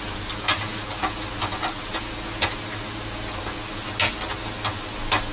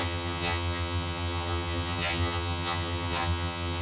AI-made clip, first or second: second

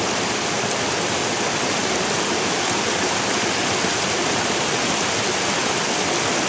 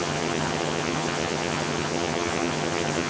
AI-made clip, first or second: second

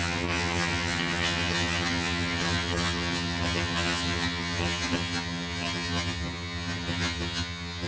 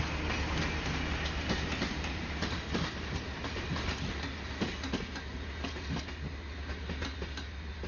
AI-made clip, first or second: first